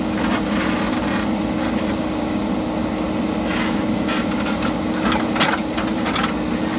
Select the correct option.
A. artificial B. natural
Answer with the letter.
B